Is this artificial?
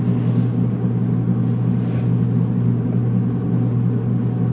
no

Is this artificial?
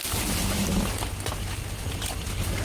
no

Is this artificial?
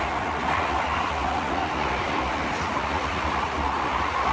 yes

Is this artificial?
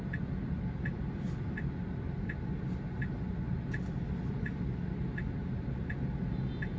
no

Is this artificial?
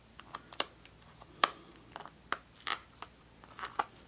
no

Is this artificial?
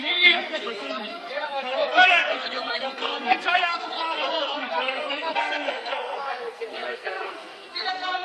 yes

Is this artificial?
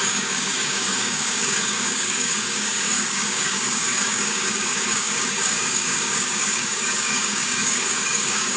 yes